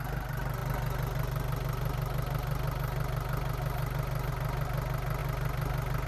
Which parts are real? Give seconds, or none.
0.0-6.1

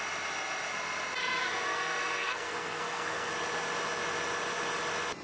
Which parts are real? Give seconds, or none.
0.0-1.2; 3.3-5.2

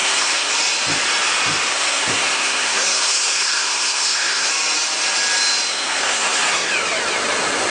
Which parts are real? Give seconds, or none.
0.5-1.7; 4.5-5.7; 6.7-7.7

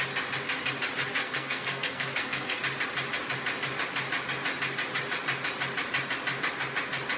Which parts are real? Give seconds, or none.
0.0-1.2; 2.6-7.2

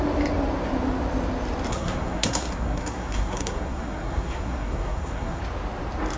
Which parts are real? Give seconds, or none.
0.0-1.7; 5.4-6.2

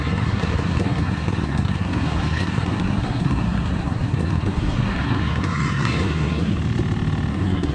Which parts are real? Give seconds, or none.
6.6-7.3

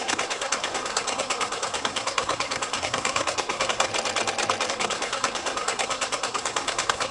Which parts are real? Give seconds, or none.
3.9-4.7

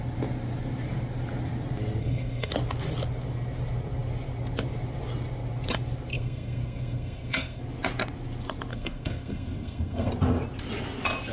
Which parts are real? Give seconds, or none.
0.0-2.0; 2.5-6.1; 7.6-8.7; 10.1-11.3